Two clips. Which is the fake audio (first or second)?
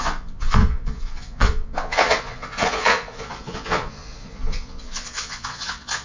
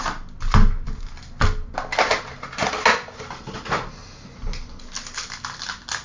first